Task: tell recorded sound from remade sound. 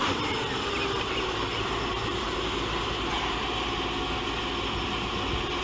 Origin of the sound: recorded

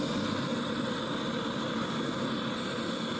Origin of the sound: recorded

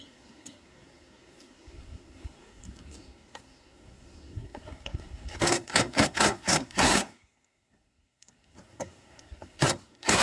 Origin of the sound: remade